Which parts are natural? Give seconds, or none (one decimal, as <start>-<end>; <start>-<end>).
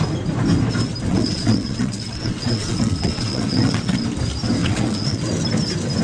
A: 0.0-1.1; 4.0-4.6; 5.2-6.0